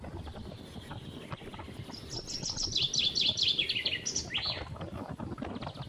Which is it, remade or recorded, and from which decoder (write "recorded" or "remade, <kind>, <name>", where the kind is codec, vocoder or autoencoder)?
recorded